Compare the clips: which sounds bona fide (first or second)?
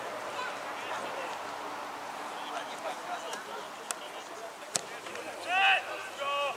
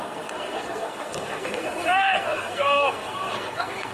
first